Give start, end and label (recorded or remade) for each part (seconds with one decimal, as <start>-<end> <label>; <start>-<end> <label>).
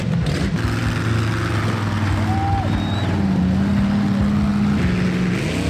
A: 0.0-5.7 recorded